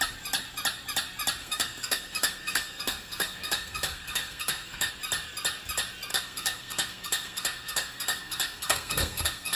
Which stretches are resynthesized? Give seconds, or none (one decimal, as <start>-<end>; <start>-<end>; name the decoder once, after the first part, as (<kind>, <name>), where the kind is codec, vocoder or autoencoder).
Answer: 1.4-4.9 (codec, SNAC); 6.1-9.6